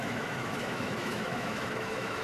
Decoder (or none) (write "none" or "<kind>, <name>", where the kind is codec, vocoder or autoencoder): autoencoder, DAC-VAE